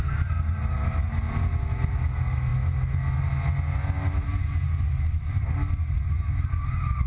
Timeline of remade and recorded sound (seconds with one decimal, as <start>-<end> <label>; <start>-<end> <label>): 0.0-7.1 recorded